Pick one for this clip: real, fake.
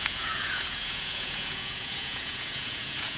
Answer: fake